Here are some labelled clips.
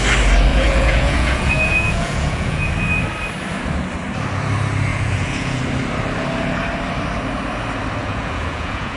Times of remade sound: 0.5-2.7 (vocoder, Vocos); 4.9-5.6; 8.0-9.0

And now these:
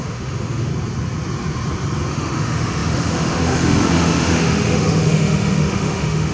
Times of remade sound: 0.0-0.7 (autoencoder, DAC-VAE); 2.1-6.3

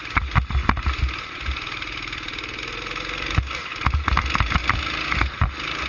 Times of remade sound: none

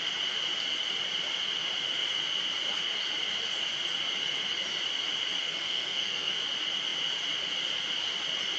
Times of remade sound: 5.4-6.4 (codec, SNAC)

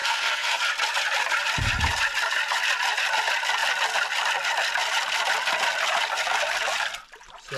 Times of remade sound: 0.0-0.6 (codec, SNAC)

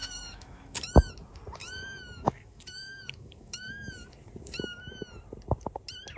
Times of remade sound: 0.0-1.1 (autoencoder, DAC-VAE); 1.6-3.9

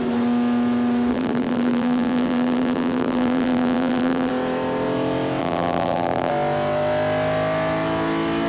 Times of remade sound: 1.1-4.3 (vocoder, BigVGAN v2); 5.4-6.3

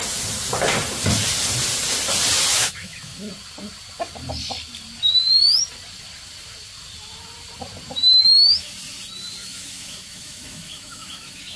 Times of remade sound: 2.5-3.3 (autoencoder, DAC-VAE); 9.4-11.6